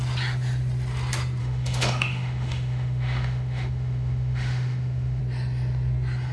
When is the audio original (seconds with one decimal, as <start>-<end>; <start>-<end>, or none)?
0.0-1.4; 5.2-6.3